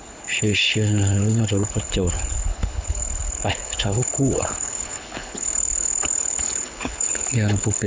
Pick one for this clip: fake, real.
fake